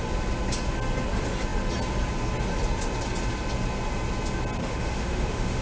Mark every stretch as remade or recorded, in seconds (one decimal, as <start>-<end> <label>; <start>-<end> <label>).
0.0-4.6 recorded; 4.6-5.6 remade